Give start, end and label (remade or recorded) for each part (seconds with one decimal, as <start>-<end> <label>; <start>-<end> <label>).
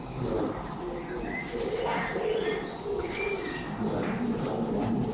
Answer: 0.0-2.7 recorded; 2.7-3.3 remade; 3.3-5.1 recorded